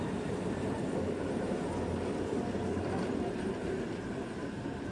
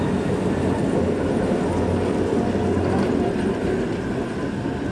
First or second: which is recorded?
second